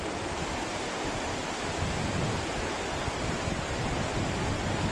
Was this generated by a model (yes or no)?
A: no